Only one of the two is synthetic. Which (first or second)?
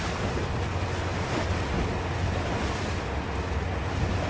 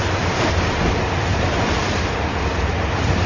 second